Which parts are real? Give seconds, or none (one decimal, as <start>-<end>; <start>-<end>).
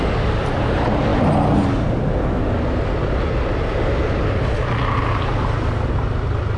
0.0-6.6